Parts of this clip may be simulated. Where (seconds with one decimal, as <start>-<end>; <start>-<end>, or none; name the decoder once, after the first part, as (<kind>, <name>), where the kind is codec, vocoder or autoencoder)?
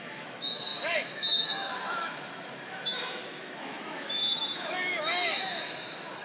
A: 0.0-6.2 (autoencoder, DAC-VAE)